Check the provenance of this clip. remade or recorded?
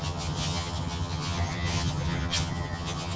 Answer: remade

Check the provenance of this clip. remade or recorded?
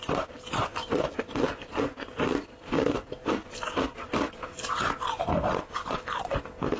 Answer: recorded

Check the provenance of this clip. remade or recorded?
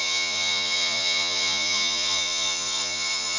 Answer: remade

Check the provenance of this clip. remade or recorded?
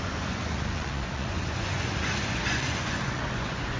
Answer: remade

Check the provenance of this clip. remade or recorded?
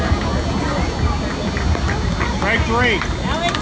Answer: recorded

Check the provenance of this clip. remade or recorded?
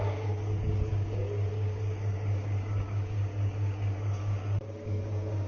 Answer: remade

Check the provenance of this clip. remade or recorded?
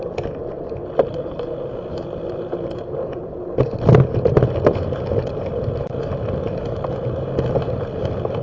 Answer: recorded